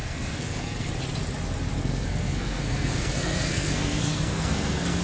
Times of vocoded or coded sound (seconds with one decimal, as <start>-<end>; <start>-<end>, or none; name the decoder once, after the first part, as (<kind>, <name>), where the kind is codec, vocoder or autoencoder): 0.0-0.9 (codec, SNAC); 1.8-5.0